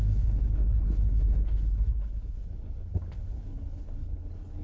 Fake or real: fake